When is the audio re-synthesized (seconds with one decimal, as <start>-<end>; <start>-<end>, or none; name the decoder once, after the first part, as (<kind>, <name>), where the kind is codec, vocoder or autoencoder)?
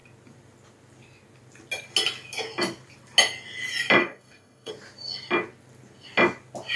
4.0-4.7 (codec, DAC)